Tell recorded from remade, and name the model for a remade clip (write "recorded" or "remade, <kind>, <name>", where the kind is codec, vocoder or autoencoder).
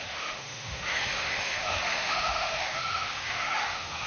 remade, autoencoder, DAC-VAE